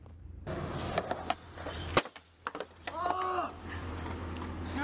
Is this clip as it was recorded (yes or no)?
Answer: yes